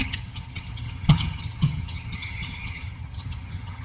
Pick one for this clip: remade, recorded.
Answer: remade